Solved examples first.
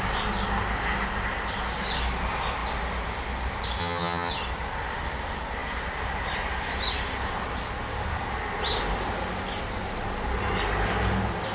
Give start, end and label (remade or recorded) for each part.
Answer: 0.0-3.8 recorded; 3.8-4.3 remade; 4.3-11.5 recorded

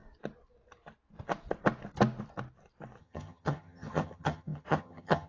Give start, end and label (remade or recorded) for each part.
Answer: 0.0-3.0 recorded; 3.0-5.3 remade